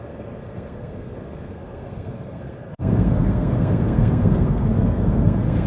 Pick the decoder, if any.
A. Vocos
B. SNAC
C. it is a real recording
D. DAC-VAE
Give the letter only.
B